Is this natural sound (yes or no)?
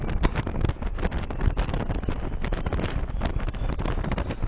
yes